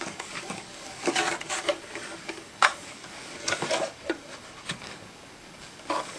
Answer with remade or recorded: remade